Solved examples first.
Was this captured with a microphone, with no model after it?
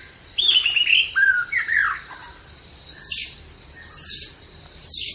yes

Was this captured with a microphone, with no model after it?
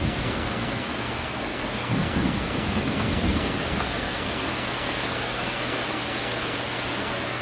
no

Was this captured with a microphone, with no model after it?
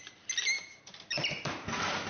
yes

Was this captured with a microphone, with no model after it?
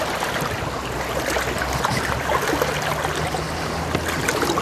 yes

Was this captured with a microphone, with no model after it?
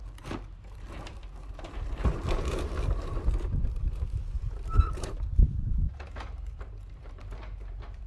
no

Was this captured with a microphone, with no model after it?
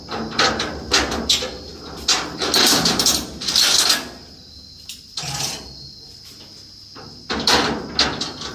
yes